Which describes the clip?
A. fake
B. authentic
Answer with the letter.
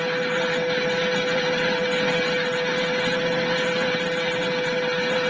B